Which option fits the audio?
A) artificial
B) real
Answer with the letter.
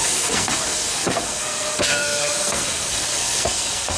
A